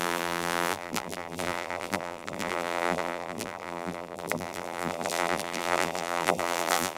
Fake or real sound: fake